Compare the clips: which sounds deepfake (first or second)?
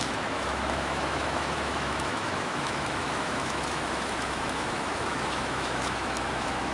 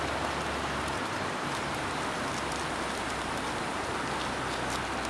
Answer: first